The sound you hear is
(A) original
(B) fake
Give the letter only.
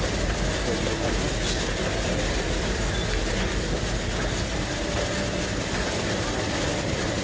A